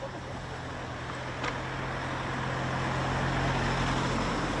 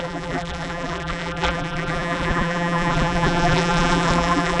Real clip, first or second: first